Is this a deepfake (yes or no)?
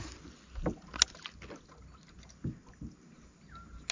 no